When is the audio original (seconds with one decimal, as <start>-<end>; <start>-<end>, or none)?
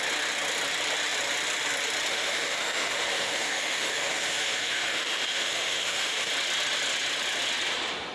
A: 0.0-2.1; 6.3-8.1